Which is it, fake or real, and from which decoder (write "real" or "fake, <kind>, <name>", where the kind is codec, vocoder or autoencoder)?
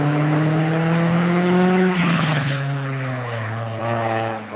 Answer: fake, codec, HILCodec